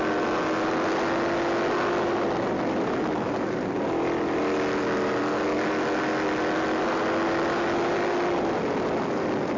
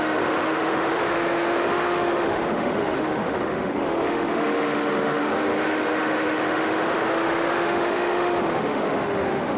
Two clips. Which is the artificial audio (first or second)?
second